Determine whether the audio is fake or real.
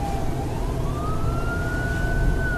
real